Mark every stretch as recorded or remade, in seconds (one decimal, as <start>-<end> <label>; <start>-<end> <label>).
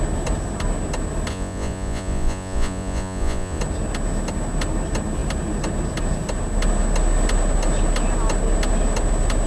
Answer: 0.0-1.3 recorded; 1.3-3.6 remade; 3.6-9.5 recorded